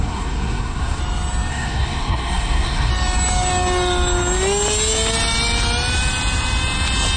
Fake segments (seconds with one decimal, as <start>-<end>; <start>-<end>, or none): 0.0-1.0; 1.5-2.9